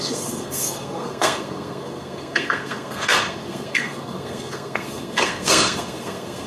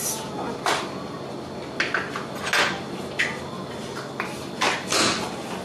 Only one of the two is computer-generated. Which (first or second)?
first